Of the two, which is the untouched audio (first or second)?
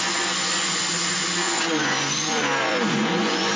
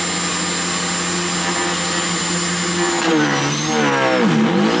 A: second